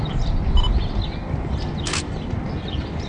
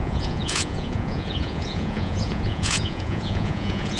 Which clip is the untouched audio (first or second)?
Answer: first